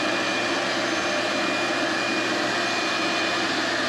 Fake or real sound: real